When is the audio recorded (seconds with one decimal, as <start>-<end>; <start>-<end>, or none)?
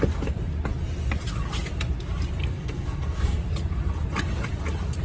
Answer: 0.0-2.4; 3.4-5.0